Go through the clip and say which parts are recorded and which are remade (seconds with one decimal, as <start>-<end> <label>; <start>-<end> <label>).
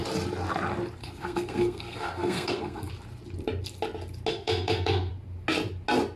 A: 0.0-1.0 recorded; 1.0-2.9 remade; 2.9-4.3 recorded; 4.3-5.1 remade; 5.1-6.2 recorded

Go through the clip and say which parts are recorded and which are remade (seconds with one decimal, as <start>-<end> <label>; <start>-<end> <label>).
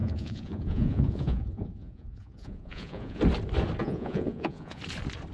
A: 0.0-3.2 remade; 3.2-3.8 recorded; 3.8-4.8 remade; 4.8-5.3 recorded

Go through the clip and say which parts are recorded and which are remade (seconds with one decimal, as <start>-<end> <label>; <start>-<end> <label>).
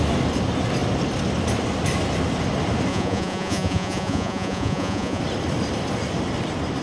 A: 0.0-2.9 recorded; 2.9-5.2 remade; 5.2-6.8 recorded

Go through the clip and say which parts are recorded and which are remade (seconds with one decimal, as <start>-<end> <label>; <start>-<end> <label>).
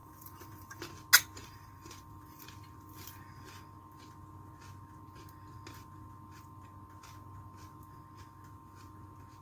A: 0.0-0.8 remade; 0.8-1.4 recorded; 1.4-2.4 remade; 2.4-9.4 recorded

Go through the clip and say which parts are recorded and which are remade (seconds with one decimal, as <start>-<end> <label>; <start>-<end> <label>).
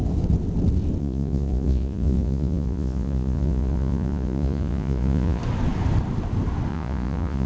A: 0.0-1.0 recorded; 1.0-5.4 remade; 5.4-6.7 recorded; 6.7-7.5 remade